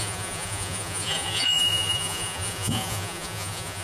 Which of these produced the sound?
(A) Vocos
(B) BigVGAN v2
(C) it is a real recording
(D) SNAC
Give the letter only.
A